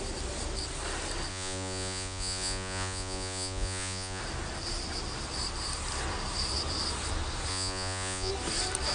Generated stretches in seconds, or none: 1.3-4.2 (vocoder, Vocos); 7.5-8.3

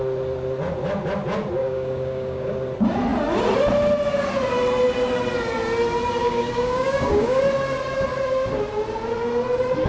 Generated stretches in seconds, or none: 1.6-2.5 (codec, DAC); 6.2-7.4

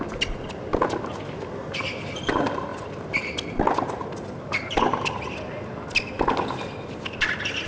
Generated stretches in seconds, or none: none

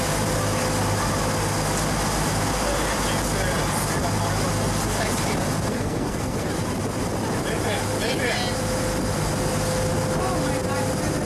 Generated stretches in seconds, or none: 5.7-6.5 (codec, SNAC)

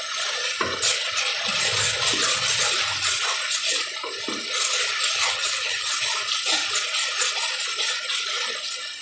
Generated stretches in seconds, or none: 5.2-5.9 (vocoder, HiFi-GAN)

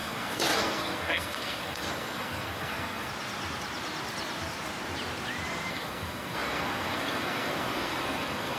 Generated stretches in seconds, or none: 0.0-3.1 (codec, SNAC); 5.7-8.6

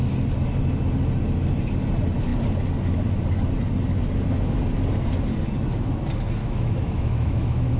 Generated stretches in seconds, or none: 6.4-7.8 (autoencoder, DAC-VAE)